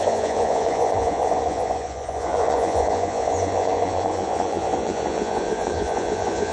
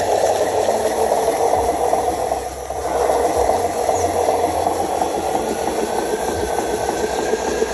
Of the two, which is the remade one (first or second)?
first